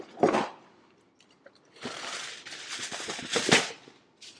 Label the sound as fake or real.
real